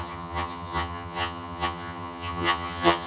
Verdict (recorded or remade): remade